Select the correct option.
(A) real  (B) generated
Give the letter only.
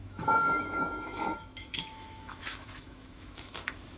B